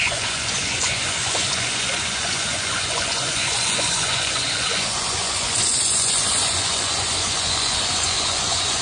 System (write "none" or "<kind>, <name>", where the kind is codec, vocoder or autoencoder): vocoder, Vocos